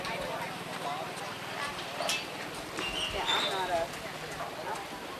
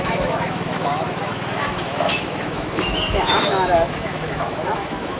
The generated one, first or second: second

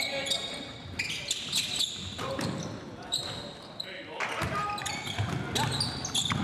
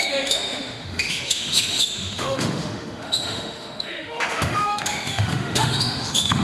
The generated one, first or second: second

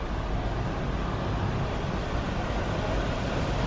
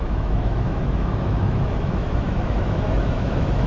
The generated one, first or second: second